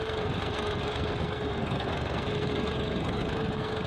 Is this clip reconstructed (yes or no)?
yes